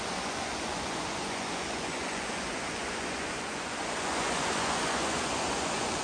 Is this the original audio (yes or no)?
no